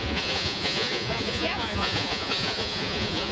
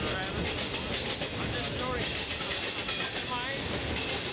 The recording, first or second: second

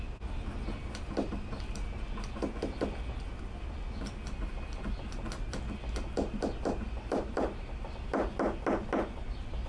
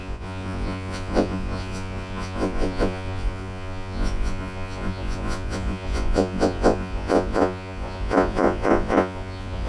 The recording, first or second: first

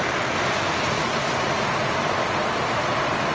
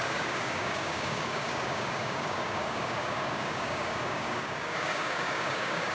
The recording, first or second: first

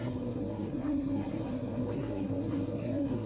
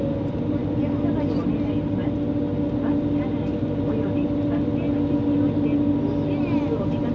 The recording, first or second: second